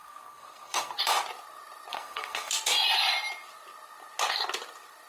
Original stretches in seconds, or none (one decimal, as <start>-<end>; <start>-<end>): 1.0-1.9; 2.5-5.1